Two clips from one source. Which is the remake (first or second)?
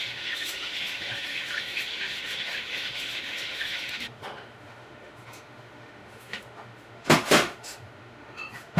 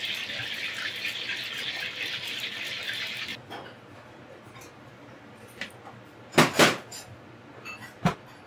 first